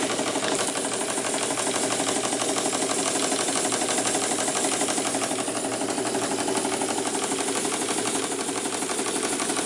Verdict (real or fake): real